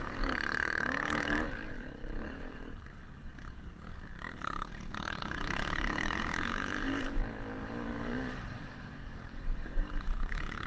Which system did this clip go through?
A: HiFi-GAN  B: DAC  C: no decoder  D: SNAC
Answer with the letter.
B